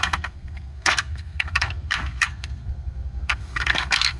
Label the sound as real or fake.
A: fake